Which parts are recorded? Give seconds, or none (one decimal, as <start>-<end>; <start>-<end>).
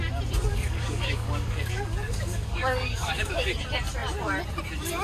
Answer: 0.0-0.5; 3.5-5.0